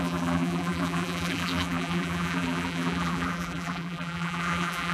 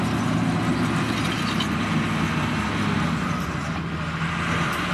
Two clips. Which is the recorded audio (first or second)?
second